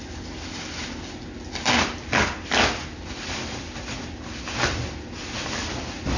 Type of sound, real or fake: real